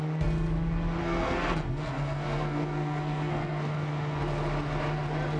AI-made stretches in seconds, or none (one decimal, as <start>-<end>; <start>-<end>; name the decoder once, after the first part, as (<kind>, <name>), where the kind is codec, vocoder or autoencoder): 1.0-4.2 (codec, SNAC)